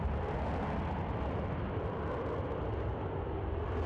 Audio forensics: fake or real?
real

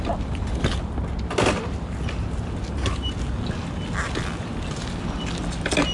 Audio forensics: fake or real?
real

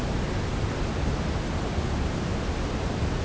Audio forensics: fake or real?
real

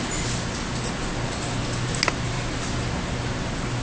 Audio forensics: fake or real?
real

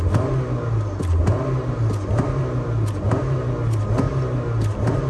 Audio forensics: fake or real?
real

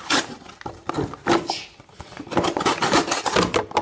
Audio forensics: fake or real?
real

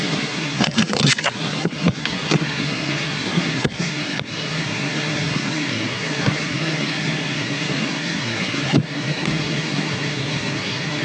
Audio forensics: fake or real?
fake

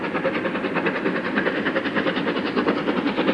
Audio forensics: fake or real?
real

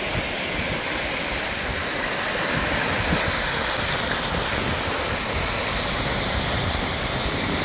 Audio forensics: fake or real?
real